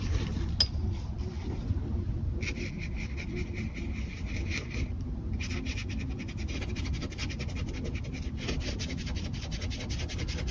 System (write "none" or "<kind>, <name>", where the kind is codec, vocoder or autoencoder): none